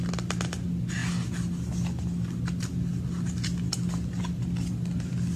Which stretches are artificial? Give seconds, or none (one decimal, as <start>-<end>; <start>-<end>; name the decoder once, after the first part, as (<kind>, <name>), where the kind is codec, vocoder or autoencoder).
none